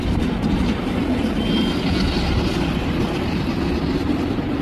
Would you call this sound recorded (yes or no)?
yes